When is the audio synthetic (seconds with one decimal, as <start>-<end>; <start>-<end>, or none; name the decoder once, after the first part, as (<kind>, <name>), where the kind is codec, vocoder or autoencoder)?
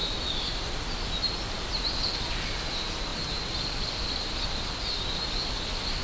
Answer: none